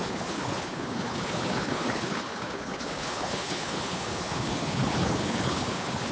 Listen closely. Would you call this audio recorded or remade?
remade